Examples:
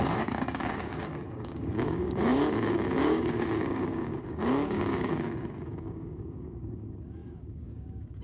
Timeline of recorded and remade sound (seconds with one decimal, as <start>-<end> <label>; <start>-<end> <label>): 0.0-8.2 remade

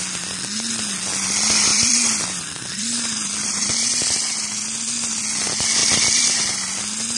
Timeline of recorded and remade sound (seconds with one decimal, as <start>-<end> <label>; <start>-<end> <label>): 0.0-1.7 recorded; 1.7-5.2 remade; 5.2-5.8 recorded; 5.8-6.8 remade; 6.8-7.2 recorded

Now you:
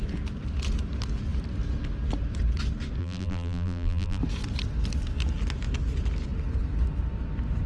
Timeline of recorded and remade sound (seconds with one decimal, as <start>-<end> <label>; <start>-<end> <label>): 0.0-3.0 recorded; 3.0-4.2 remade; 4.2-7.7 recorded

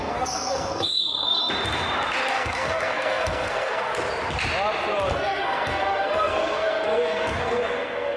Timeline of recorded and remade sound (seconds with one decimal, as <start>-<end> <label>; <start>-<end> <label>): 0.0-1.4 remade; 1.4-2.3 recorded; 2.3-3.9 remade; 3.9-5.1 recorded; 5.1-8.2 remade

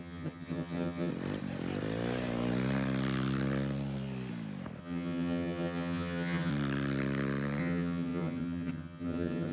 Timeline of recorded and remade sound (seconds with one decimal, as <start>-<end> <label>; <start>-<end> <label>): 0.0-1.1 remade; 1.1-4.8 recorded; 4.8-6.5 remade; 6.5-7.6 recorded; 7.6-9.5 remade

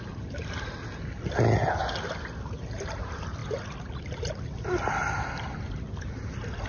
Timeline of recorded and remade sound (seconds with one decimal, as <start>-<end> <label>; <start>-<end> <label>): 0.0-6.7 recorded

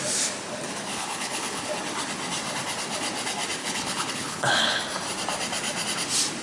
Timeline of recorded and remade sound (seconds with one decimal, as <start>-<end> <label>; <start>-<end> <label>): 0.0-0.9 recorded; 0.9-1.7 remade; 1.7-3.6 recorded; 3.6-4.8 remade; 4.8-6.4 recorded

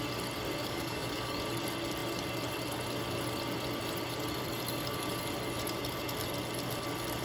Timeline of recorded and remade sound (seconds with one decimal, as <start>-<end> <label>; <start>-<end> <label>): 0.0-0.6 recorded; 0.6-1.4 remade; 1.4-7.2 recorded